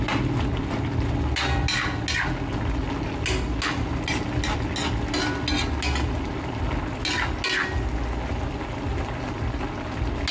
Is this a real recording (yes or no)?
yes